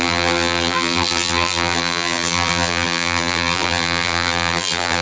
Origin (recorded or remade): remade